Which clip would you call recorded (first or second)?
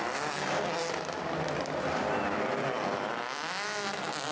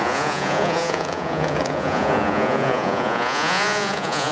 first